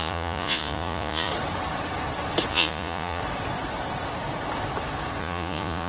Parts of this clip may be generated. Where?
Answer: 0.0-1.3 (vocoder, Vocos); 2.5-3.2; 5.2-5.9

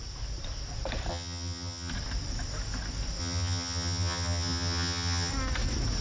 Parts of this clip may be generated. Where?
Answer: 1.1-1.9 (vocoder, HiFi-GAN); 3.2-5.3